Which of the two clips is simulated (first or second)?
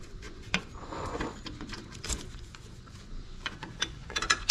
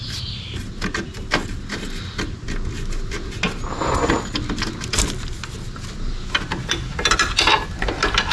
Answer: first